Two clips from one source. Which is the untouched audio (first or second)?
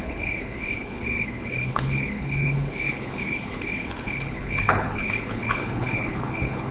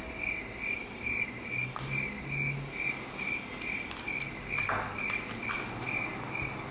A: second